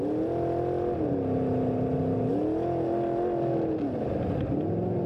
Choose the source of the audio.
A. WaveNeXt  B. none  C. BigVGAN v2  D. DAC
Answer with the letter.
B